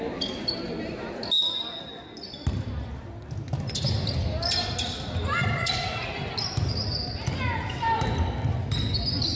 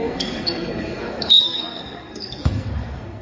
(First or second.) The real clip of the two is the first